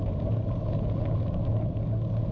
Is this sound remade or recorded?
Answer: recorded